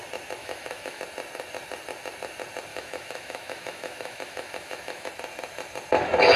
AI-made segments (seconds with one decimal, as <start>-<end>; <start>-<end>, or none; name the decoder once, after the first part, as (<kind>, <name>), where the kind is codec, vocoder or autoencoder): 0.4-1.0 (autoencoder, DAC-VAE); 2.7-5.1